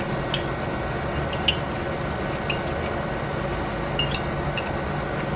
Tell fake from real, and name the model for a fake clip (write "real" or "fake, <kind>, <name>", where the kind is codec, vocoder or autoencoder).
real